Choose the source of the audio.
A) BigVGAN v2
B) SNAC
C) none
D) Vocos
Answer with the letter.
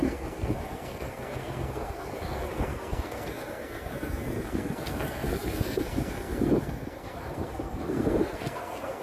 B